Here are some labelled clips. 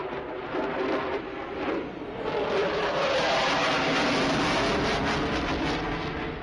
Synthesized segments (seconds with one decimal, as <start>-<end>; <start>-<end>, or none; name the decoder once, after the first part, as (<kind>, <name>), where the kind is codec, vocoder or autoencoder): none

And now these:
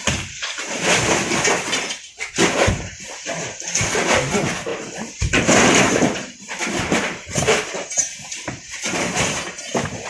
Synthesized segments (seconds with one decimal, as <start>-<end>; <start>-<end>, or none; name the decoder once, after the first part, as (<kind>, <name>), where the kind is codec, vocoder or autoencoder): 0.0-10.1 (vocoder, BigVGAN v2)

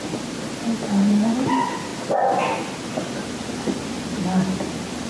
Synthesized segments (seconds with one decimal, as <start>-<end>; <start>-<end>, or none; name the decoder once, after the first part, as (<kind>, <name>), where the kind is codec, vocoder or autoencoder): none

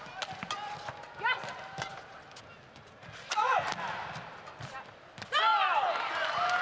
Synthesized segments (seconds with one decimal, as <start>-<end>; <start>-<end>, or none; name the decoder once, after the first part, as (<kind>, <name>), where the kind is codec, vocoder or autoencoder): none